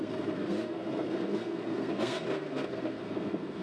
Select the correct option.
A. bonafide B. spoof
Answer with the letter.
B